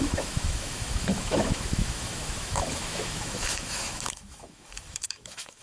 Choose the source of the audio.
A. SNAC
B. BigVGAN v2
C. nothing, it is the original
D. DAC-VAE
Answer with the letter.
D